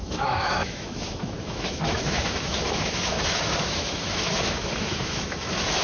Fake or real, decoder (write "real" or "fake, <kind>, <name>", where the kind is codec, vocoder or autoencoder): fake, autoencoder, DAC-VAE